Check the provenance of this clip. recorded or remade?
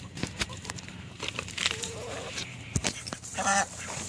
remade